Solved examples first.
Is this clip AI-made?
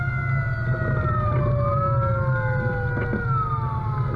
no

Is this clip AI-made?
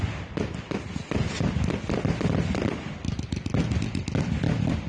no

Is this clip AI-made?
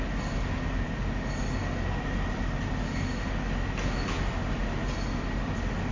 no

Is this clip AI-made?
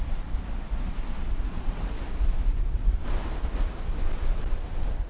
no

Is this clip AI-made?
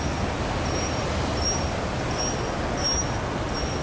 no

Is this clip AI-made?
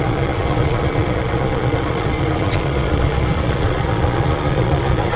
yes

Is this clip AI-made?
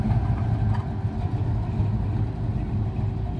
no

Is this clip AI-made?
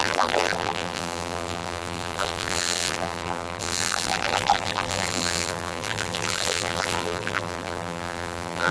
yes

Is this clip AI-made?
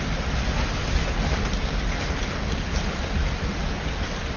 no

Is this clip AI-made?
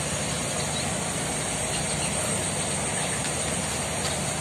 no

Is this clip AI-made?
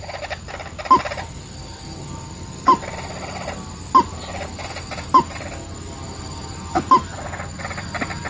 no